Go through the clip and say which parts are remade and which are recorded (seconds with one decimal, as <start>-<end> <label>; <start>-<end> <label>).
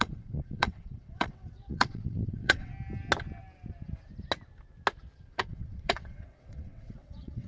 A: 0.0-2.7 remade; 2.7-5.3 recorded; 5.3-7.5 remade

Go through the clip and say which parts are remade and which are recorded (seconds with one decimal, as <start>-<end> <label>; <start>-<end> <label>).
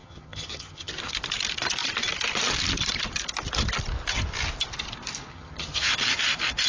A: 0.0-0.9 remade; 0.9-5.3 recorded; 5.3-5.9 remade; 5.9-6.7 recorded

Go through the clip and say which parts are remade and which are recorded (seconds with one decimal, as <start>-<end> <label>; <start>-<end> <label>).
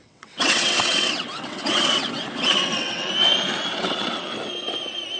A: 0.0-3.1 remade; 3.1-3.7 recorded; 3.7-4.3 remade; 4.3-5.2 recorded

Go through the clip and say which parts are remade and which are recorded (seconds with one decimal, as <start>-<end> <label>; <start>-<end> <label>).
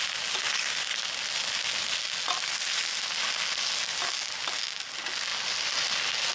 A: 0.0-6.3 recorded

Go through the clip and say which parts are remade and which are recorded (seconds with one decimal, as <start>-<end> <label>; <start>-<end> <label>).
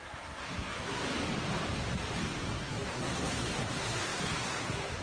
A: 0.0-1.0 remade; 1.0-2.4 recorded; 2.4-5.0 remade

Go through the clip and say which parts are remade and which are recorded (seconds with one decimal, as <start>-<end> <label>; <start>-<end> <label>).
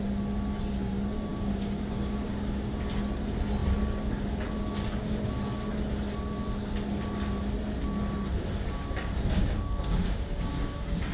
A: 0.0-1.3 recorded; 1.3-2.8 remade; 2.8-9.4 recorded; 9.4-10.5 remade; 10.5-11.1 recorded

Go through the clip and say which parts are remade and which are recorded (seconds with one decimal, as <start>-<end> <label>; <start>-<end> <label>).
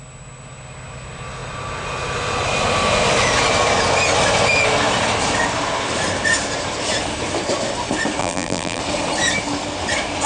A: 0.0-8.2 recorded; 8.2-8.8 remade; 8.8-10.3 recorded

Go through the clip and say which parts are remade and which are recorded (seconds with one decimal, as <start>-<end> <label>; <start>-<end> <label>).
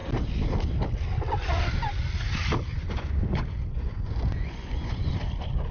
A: 0.0-2.7 recorded; 2.7-5.1 remade; 5.1-5.7 recorded